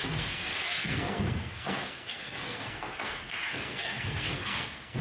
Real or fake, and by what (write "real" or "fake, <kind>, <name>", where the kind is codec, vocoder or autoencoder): fake, codec, SNAC